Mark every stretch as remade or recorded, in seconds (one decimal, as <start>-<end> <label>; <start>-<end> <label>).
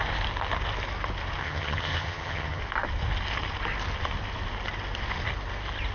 0.0-1.4 recorded; 1.4-2.6 remade; 2.6-5.9 recorded